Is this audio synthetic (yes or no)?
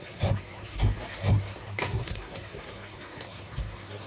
yes